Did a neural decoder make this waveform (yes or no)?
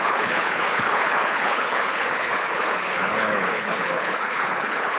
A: yes